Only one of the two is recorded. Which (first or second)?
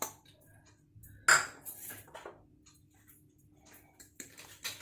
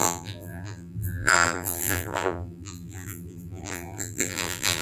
first